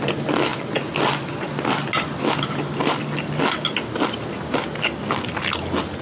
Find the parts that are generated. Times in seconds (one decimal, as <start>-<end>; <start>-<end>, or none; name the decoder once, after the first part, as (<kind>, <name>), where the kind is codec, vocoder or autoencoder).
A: none